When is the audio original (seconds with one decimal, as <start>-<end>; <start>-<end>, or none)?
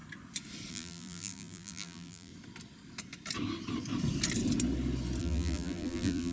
0.0-0.7; 2.3-5.2